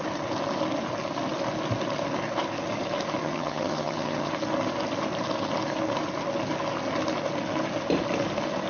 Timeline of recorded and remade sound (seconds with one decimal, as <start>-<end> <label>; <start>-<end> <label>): 0.0-3.2 recorded; 3.2-4.3 remade; 4.3-8.7 recorded